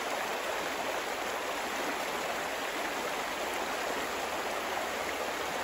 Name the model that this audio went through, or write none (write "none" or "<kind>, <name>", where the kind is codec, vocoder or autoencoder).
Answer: none